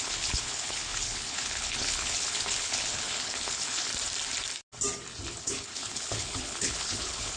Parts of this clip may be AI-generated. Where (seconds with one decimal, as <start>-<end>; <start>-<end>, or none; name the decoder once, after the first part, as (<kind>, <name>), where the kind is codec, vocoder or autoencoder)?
0.0-3.9 (codec, HILCodec); 5.4-7.4